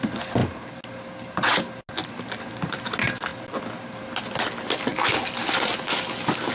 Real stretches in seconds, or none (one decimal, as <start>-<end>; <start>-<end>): 0.0-6.5

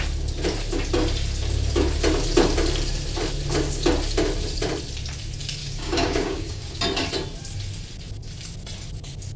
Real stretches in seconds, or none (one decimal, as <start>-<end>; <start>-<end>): 0.0-5.6; 6.8-9.4

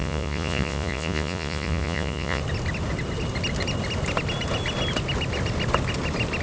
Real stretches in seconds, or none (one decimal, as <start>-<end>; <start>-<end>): 2.4-6.4

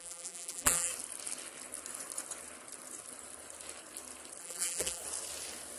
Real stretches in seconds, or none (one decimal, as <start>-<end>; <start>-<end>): 0.9-4.4; 5.0-5.8